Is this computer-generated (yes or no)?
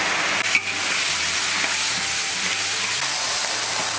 no